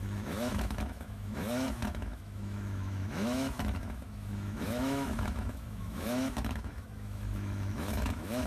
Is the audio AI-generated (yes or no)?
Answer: yes